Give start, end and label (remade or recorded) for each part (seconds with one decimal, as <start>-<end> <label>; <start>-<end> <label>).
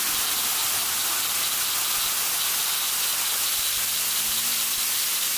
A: 0.0-5.4 recorded